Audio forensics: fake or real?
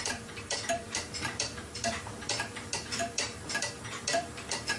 fake